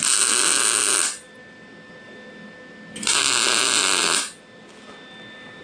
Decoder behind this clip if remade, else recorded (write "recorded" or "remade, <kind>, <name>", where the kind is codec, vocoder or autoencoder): recorded